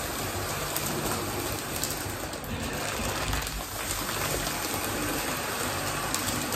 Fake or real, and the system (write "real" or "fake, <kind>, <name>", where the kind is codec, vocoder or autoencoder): real